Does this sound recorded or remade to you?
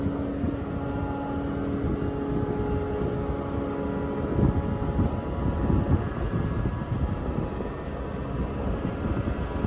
recorded